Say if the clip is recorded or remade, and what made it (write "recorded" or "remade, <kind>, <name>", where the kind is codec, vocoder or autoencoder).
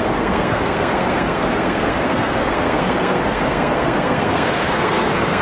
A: remade, codec, SNAC